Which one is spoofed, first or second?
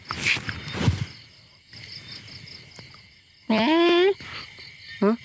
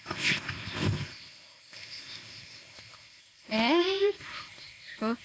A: second